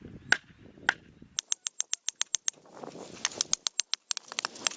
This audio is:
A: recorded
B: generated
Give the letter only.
A